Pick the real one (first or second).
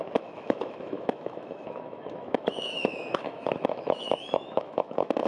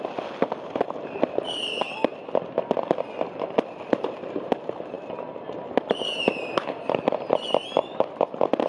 second